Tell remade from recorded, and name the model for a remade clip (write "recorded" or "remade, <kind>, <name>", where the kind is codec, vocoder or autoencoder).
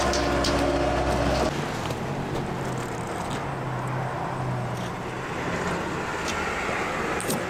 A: recorded